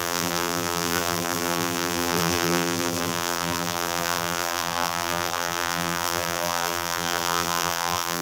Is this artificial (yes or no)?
yes